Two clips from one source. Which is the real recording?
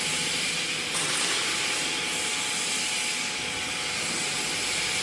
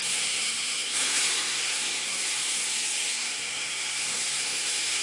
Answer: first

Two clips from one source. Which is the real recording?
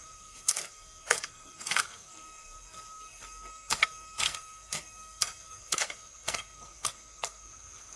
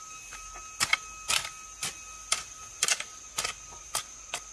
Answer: second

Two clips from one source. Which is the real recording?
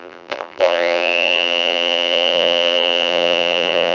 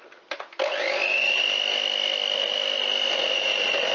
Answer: second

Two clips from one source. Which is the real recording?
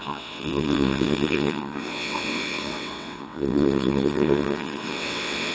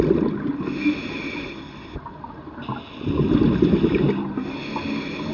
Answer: second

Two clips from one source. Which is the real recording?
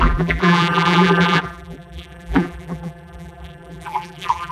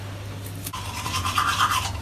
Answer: second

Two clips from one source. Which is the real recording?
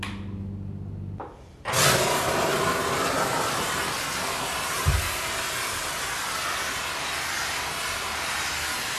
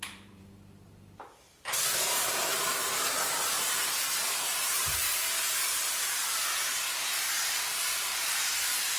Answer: first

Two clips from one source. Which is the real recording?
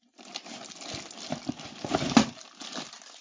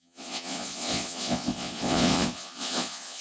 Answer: first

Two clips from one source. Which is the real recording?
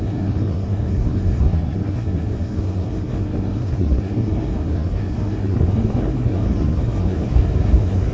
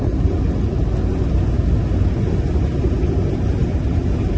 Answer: second